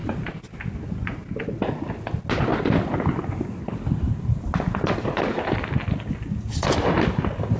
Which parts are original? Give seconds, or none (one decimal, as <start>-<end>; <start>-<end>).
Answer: 0.0-7.6